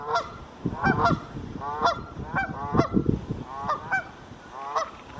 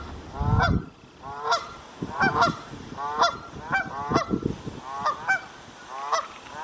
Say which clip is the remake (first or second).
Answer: first